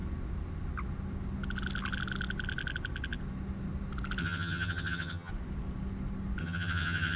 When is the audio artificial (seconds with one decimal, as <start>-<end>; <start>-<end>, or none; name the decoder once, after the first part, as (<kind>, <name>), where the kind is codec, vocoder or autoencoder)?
4.2-5.3 (vocoder, HiFi-GAN); 6.4-7.2